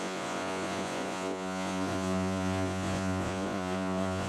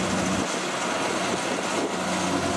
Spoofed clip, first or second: first